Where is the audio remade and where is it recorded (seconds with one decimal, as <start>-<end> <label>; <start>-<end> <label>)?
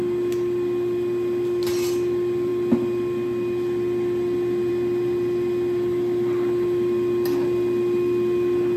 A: 0.0-8.8 recorded